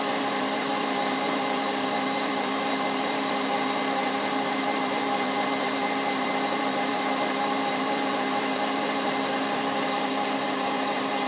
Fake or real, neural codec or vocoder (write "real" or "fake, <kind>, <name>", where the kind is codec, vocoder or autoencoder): fake, vocoder, BigVGAN v2